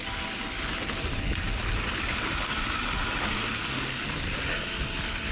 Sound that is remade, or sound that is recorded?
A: recorded